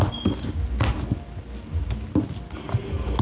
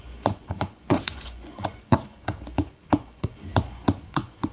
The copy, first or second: second